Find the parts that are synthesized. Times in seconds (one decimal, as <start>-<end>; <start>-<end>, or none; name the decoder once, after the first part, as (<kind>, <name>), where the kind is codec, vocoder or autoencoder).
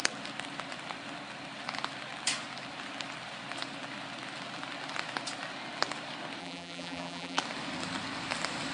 6.4-7.4 (vocoder, BigVGAN v2)